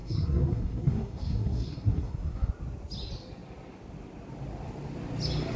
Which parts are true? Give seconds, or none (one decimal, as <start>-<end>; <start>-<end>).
2.5-5.6